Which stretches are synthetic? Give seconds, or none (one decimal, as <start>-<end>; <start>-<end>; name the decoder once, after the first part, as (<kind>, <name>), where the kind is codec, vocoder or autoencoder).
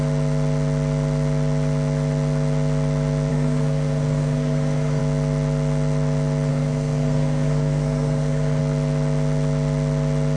3.3-5.0 (codec, SNAC); 6.5-8.6